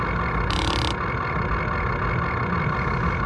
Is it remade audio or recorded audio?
recorded